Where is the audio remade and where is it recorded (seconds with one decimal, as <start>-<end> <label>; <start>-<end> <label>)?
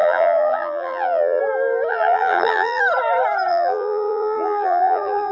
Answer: 0.0-1.4 remade; 1.4-1.9 recorded; 1.9-2.8 remade; 2.8-3.5 recorded; 3.5-5.3 remade